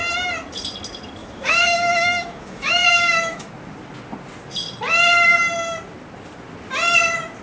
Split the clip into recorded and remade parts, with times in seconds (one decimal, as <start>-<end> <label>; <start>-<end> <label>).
0.0-1.2 recorded; 1.2-3.5 remade; 3.5-7.4 recorded